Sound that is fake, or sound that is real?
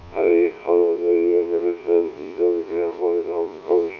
fake